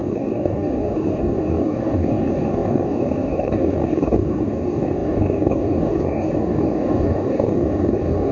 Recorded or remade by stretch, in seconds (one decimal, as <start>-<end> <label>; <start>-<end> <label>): 0.0-8.3 remade